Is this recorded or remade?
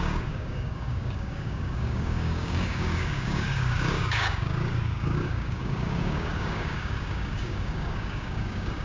remade